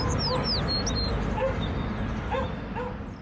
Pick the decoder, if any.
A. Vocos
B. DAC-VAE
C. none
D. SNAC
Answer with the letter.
C